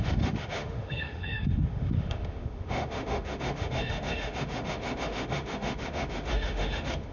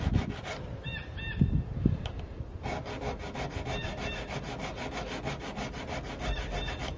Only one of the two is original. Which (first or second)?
second